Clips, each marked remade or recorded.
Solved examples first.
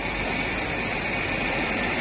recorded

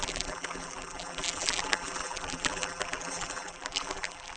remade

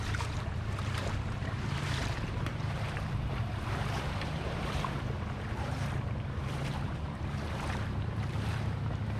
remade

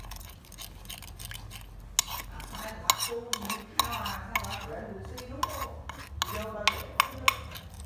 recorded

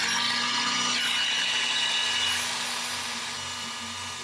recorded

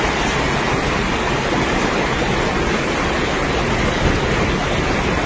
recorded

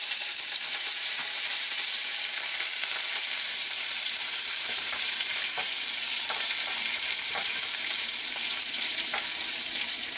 remade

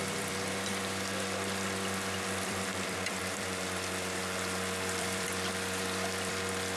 remade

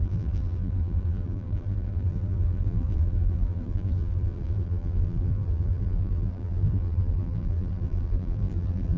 remade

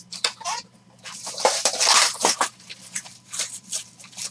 remade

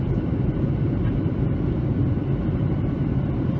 remade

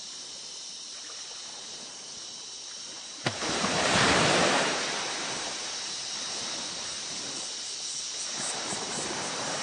remade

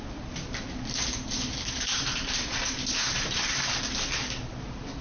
recorded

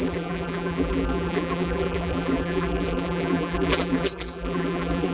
remade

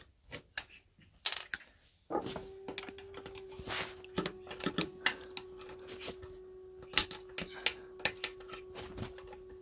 recorded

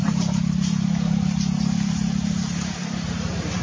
remade